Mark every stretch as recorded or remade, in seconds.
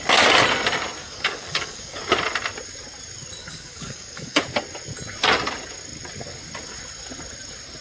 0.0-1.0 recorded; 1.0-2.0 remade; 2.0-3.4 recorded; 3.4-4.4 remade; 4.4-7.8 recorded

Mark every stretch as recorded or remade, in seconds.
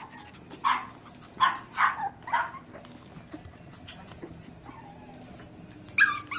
0.0-6.4 recorded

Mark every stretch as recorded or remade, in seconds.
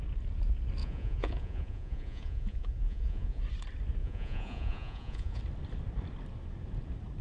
0.0-0.8 recorded; 0.8-3.4 remade; 3.4-4.0 recorded; 4.0-5.4 remade; 5.4-7.2 recorded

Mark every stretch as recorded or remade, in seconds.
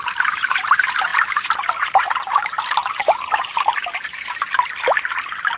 0.0-3.0 remade; 3.0-5.6 recorded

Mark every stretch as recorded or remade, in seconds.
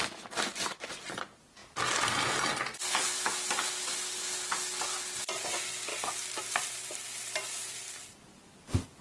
0.0-1.6 recorded; 1.6-2.3 remade; 2.3-5.9 recorded; 5.9-8.1 remade; 8.1-9.0 recorded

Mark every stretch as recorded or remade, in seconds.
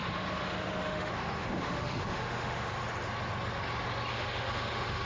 0.0-2.8 remade; 2.8-4.1 recorded; 4.1-5.1 remade